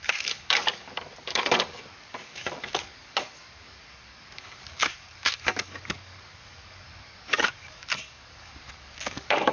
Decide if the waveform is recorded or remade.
remade